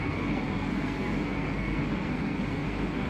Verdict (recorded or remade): remade